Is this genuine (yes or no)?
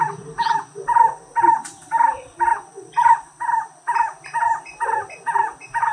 yes